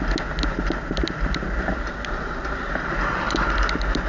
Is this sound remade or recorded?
recorded